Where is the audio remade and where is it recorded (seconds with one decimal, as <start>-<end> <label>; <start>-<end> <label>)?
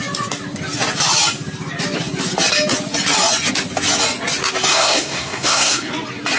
0.0-4.7 recorded; 4.7-5.9 remade; 5.9-6.4 recorded